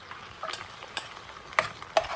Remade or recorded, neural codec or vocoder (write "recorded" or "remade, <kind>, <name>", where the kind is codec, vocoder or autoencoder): recorded